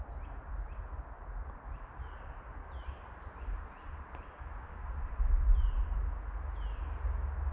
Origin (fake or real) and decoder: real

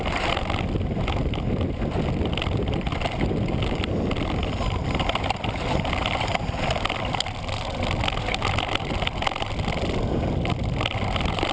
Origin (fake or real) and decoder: real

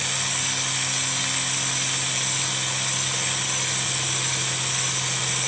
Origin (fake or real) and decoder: real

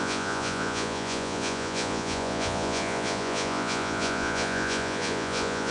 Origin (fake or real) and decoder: fake, vocoder, Vocos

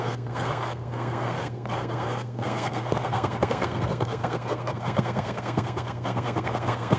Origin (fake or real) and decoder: fake, codec, SNAC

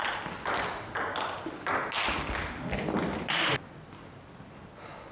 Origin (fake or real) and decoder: real